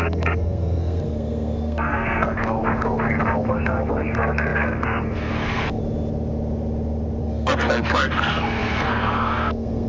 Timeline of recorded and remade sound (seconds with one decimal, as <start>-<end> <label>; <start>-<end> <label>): 0.0-5.8 remade; 5.8-7.2 recorded; 7.2-9.9 remade